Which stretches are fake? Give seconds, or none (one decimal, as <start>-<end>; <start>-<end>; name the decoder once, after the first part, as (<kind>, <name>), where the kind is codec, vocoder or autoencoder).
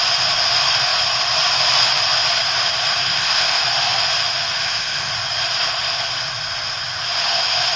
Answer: 3.1-3.6 (codec, ZipCodec); 4.6-5.1